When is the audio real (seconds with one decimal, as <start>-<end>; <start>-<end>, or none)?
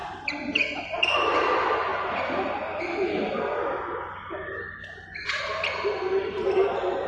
1.1-7.1